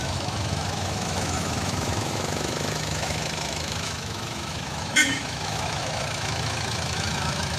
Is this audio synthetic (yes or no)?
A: yes